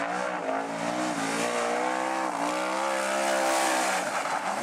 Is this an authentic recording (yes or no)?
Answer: yes